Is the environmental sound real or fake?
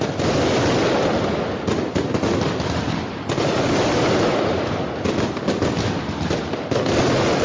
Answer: real